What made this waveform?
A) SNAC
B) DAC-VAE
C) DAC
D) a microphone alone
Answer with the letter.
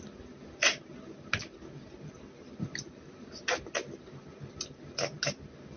D